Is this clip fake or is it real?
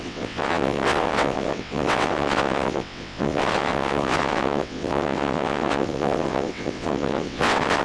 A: fake